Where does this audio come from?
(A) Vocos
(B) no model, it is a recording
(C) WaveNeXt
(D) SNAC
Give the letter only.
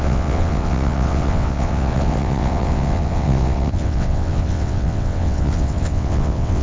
C